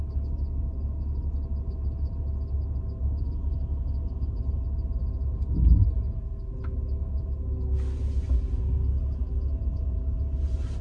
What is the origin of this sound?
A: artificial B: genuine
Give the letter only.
B